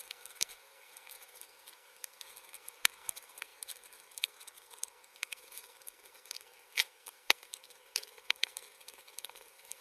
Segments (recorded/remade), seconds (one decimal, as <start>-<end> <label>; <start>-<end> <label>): 0.0-9.8 remade